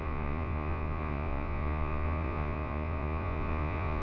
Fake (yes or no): yes